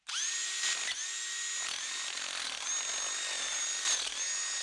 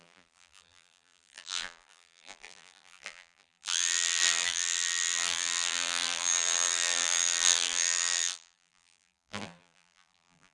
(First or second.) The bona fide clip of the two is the first